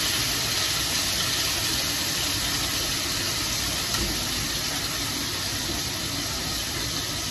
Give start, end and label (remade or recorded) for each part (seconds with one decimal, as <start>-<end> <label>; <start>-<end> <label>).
0.0-7.3 recorded